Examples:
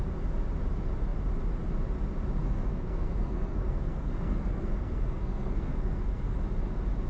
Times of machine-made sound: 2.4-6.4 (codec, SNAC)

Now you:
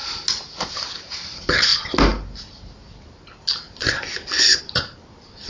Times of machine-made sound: none

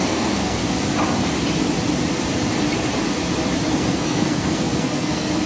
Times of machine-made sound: 0.0-0.6 (codec, SNAC); 3.7-5.5

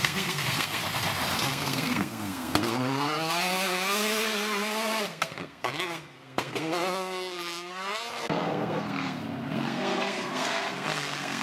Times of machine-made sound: 0.0-0.8 (codec, SNAC); 1.5-11.4

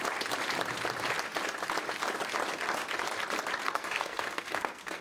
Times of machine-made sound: 3.6-5.0 (codec, SNAC)

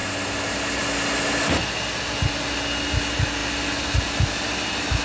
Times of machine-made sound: none